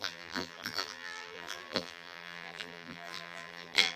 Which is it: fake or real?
fake